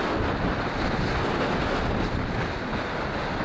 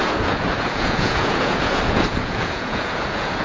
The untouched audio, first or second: first